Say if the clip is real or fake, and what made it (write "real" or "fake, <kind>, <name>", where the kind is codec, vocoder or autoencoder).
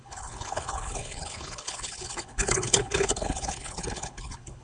fake, codec, HILCodec